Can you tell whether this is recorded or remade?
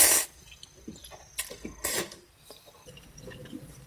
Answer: recorded